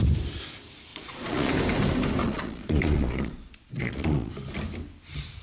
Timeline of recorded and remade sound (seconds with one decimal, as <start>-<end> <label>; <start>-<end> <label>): 0.0-0.9 recorded; 0.9-1.5 remade; 1.5-2.2 recorded; 2.2-4.3 remade; 4.3-5.4 recorded